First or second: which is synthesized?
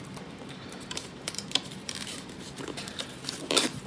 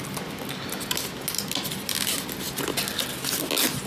first